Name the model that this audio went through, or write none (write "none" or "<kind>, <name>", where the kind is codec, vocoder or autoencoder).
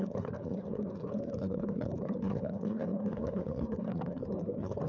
codec, SNAC